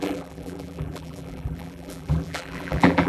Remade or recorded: remade